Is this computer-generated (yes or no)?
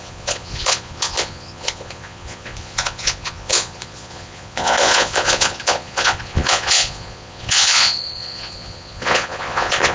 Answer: yes